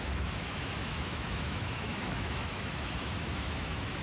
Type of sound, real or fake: fake